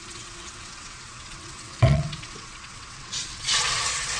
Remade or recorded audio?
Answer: remade